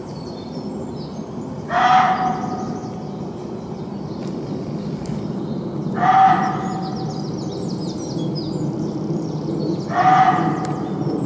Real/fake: real